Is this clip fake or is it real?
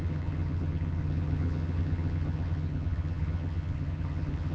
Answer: fake